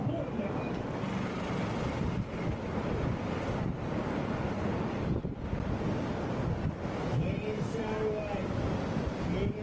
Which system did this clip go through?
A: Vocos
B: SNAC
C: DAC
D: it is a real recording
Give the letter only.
D